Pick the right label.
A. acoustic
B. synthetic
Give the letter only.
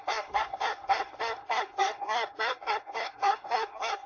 B